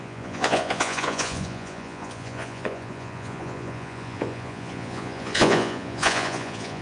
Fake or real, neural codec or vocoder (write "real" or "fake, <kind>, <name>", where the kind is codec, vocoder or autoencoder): fake, vocoder, Vocos